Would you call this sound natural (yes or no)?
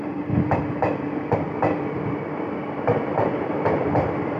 no